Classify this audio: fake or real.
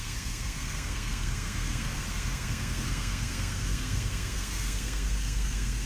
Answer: fake